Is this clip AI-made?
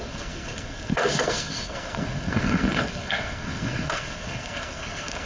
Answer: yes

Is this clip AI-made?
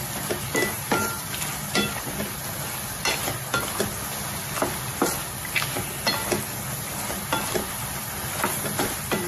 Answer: no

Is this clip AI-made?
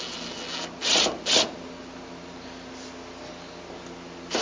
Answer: no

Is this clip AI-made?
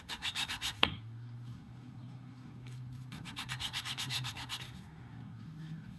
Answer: yes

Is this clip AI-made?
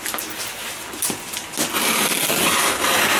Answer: no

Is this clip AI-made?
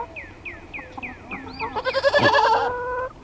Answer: no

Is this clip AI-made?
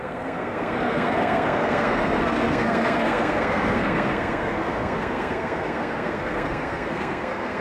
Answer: yes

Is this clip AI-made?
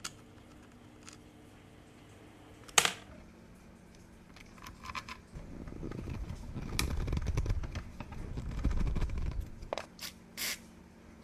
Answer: no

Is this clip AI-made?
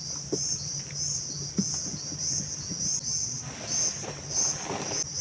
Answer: no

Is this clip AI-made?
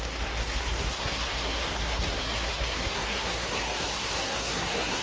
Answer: yes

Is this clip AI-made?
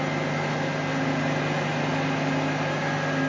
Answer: no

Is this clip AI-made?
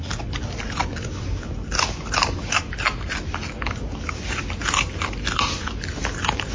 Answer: no